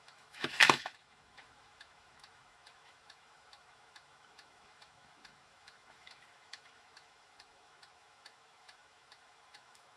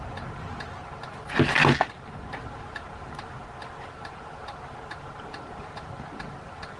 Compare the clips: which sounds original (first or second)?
second